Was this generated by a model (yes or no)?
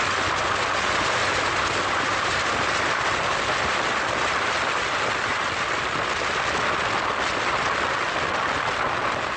no